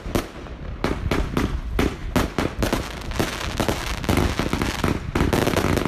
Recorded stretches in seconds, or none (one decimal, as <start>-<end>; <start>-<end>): 0.0-5.9